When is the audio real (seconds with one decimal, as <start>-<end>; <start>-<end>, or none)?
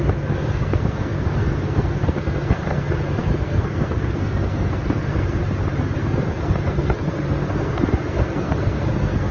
5.4-6.0